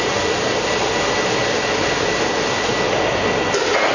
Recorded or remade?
recorded